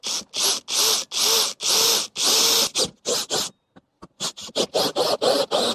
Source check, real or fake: real